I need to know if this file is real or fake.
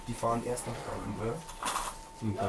real